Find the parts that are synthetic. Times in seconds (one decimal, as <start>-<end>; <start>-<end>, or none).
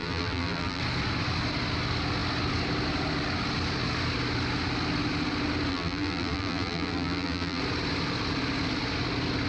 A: 0.0-0.8; 5.7-7.6